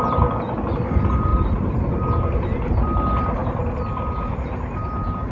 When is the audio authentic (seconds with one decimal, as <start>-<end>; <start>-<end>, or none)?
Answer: 0.0-1.3; 2.7-5.3

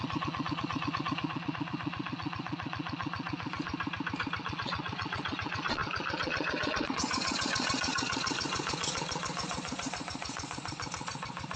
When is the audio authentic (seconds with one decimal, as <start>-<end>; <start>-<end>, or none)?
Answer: 3.7-4.4

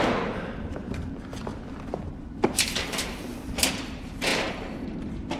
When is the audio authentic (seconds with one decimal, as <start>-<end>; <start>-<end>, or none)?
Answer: 4.3-5.0

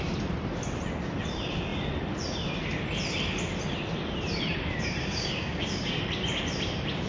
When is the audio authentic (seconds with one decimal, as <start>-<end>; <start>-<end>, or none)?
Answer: 0.0-5.0; 6.0-7.1

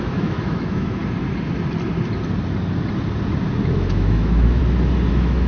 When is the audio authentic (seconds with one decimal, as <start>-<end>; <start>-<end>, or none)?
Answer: 1.0-3.6; 4.6-5.1

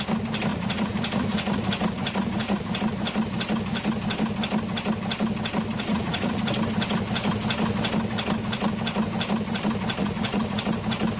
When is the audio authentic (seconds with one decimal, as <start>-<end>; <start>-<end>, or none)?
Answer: 0.0-0.5; 2.8-5.9; 6.4-10.0; 10.6-11.2

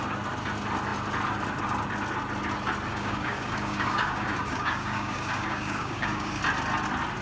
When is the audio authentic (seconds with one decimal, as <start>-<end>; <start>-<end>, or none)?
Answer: 0.0-2.9; 6.4-7.2

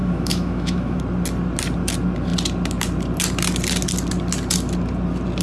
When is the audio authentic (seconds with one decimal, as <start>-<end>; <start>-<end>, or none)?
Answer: 1.0-5.4